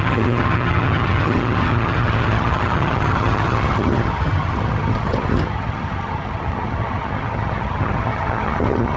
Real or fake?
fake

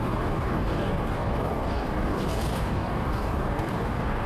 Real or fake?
fake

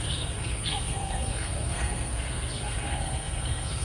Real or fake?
fake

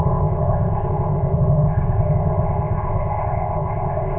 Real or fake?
fake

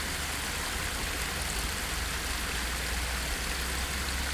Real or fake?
real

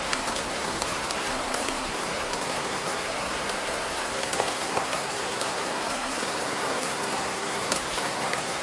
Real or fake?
fake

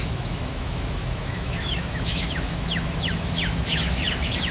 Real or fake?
fake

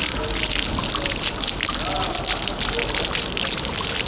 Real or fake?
real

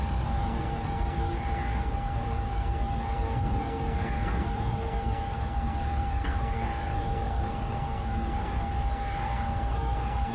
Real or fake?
fake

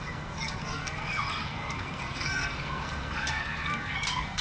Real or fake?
fake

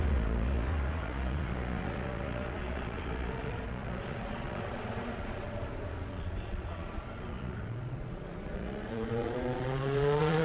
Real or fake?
fake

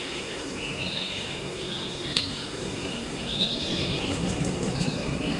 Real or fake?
fake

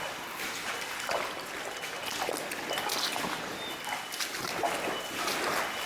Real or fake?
real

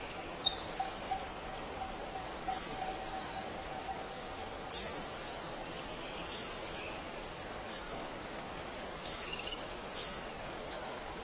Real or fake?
fake